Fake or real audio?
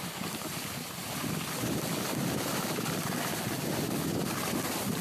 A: real